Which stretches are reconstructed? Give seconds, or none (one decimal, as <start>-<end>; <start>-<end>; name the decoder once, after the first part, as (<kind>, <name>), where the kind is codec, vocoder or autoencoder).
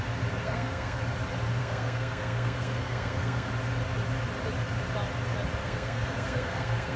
0.4-1.0 (codec, SNAC); 1.6-3.5; 5.6-7.0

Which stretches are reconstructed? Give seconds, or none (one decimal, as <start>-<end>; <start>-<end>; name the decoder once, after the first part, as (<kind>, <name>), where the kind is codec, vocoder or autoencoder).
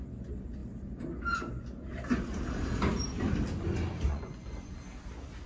4.1-4.7 (vocoder, Vocos)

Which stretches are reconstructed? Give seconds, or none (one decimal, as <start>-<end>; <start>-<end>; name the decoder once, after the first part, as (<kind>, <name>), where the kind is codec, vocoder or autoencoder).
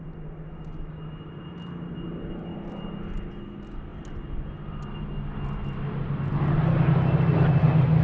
none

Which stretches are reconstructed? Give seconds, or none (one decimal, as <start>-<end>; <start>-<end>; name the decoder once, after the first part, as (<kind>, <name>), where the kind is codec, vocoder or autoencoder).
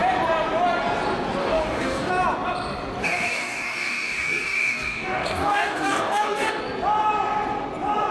1.4-2.1 (codec, DAC); 3.0-6.6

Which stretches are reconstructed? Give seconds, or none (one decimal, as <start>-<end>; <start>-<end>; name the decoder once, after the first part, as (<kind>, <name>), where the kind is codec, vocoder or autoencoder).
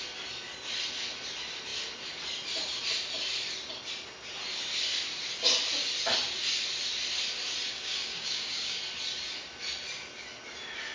7.7-8.8 (codec, DAC)